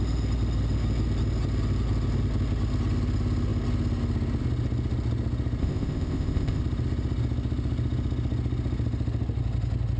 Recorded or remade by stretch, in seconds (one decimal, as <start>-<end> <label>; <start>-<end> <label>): 0.0-5.6 recorded; 5.6-6.6 remade; 6.6-10.0 recorded